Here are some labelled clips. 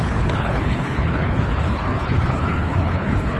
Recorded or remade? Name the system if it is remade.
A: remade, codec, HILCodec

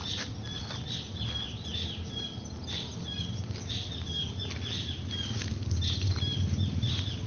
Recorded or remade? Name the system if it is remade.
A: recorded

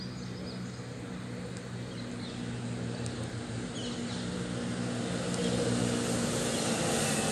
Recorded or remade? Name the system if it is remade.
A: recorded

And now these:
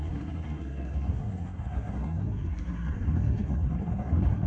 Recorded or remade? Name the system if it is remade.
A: remade, codec, SNAC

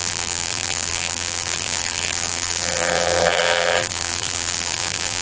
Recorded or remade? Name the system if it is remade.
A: remade, vocoder, BigVGAN v2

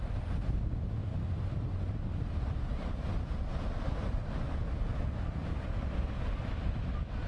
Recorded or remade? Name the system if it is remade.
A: recorded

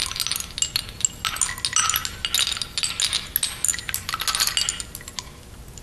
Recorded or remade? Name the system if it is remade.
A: recorded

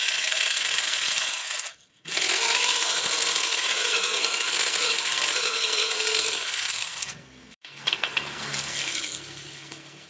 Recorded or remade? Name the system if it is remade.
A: remade, codec, SNAC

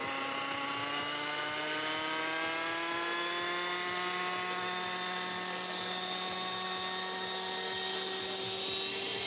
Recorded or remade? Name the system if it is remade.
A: recorded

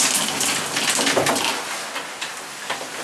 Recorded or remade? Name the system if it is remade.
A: recorded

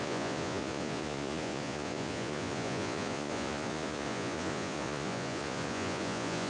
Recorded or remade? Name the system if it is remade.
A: remade, vocoder, Vocos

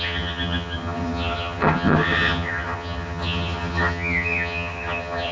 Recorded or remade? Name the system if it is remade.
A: remade, vocoder, HiFi-GAN